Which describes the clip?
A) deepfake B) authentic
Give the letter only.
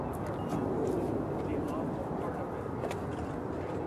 B